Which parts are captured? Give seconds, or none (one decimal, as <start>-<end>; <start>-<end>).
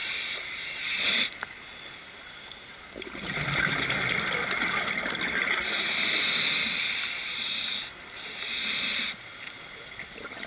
0.0-10.5